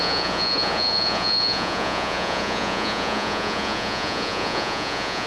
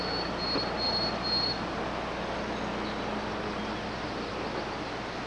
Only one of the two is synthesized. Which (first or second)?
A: first